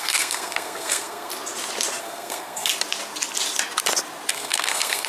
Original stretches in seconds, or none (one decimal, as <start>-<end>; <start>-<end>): 1.3-2.0; 2.7-4.3